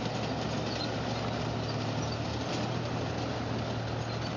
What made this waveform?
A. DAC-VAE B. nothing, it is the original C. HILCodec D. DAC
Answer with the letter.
B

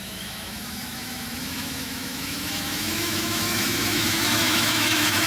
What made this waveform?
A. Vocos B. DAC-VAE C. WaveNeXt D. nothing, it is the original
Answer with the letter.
B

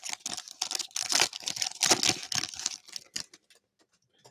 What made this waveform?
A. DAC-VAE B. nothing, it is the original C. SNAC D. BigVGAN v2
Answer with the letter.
B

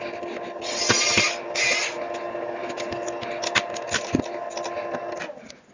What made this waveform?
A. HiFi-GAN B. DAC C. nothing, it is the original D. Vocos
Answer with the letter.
C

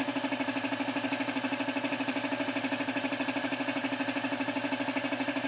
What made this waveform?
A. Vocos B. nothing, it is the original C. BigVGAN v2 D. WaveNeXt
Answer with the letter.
B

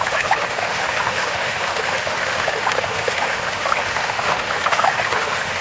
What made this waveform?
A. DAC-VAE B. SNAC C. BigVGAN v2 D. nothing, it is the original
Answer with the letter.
A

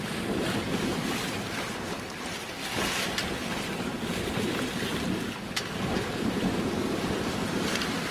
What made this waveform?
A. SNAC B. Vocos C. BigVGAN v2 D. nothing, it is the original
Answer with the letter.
D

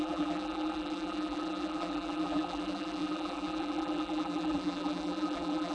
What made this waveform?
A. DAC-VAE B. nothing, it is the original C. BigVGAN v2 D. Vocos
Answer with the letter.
C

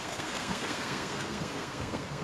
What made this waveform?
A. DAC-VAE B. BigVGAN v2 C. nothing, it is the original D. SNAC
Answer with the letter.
D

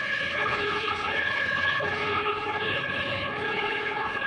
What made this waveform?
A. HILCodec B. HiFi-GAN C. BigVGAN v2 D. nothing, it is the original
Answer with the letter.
A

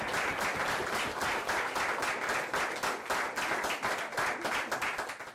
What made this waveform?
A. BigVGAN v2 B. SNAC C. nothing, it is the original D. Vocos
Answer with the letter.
C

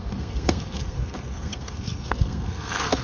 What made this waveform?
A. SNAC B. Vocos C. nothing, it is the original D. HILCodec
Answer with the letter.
A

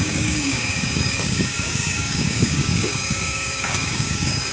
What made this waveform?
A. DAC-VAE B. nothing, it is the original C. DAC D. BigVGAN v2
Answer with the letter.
C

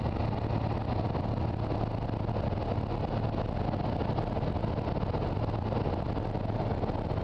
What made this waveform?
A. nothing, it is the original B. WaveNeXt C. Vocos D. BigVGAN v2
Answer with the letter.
A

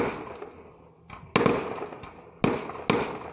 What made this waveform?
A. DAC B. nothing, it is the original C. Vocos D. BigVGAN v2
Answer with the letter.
B